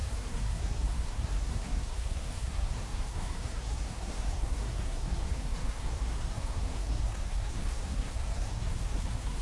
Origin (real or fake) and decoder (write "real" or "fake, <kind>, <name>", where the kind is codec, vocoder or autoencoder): fake, codec, SNAC